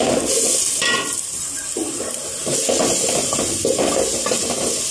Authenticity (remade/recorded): recorded